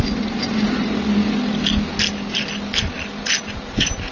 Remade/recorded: recorded